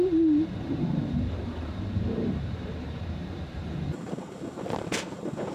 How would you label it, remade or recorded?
remade